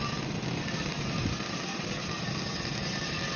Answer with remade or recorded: recorded